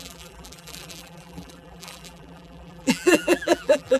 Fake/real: fake